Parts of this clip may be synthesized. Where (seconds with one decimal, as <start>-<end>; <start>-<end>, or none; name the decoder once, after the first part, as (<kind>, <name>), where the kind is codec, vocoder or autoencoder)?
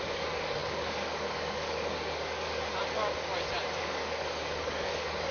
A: 0.0-2.7 (codec, DAC); 3.8-5.3